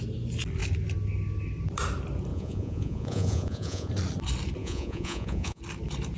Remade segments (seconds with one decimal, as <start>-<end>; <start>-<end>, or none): 2.3-3.9; 4.6-5.6